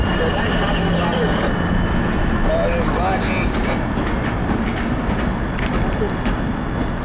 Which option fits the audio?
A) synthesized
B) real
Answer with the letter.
B